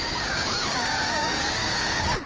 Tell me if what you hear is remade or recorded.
remade